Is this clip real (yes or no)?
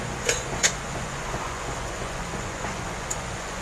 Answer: no